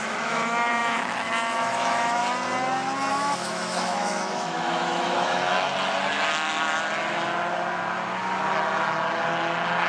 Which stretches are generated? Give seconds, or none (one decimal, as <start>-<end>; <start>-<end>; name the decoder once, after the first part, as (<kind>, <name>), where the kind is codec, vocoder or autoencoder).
0.0-2.2 (autoencoder, DAC-VAE); 3.1-5.4